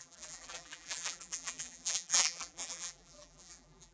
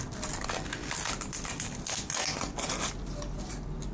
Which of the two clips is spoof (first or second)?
first